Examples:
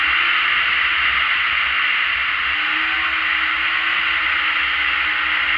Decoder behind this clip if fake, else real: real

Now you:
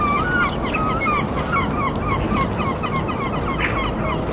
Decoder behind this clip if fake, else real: real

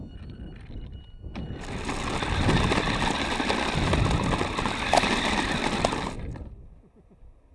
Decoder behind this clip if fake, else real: real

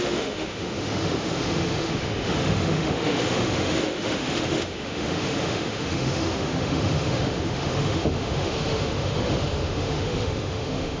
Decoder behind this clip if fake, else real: fake, autoencoder, DAC-VAE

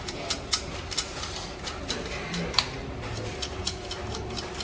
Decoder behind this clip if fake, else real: real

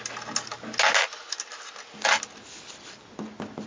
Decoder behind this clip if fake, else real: real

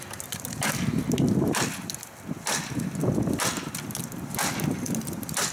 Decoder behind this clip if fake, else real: real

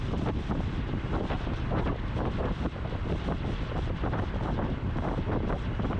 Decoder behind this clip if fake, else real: real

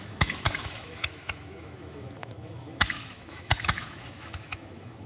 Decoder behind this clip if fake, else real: fake, autoencoder, DAC-VAE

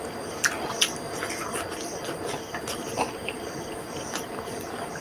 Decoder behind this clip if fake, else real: real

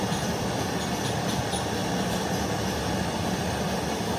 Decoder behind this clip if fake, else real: real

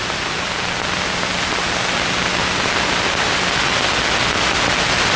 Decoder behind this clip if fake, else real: real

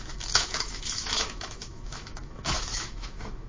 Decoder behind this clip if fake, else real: fake, autoencoder, DAC-VAE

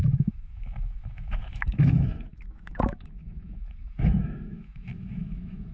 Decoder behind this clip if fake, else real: fake, autoencoder, DAC-VAE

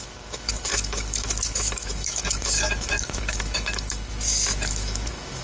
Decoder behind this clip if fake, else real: fake, autoencoder, DAC-VAE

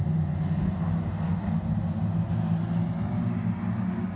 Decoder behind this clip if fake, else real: real